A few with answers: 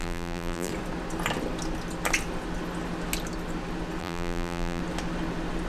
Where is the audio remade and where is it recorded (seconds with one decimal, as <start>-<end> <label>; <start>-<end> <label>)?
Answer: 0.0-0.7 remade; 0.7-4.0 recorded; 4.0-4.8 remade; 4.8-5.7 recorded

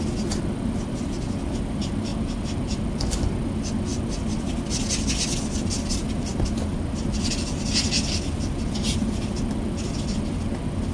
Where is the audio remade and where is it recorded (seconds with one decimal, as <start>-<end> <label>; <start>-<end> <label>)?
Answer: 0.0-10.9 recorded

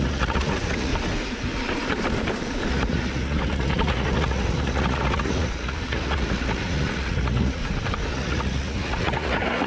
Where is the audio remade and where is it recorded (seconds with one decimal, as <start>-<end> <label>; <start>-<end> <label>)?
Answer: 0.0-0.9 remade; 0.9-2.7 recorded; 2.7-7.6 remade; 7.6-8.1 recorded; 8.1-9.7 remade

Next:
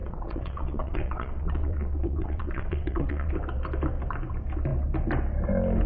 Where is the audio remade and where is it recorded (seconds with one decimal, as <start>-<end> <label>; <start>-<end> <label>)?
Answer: 0.0-3.3 remade; 3.3-5.9 recorded